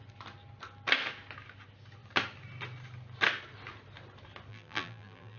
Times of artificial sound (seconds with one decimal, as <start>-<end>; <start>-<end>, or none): 4.5-5.4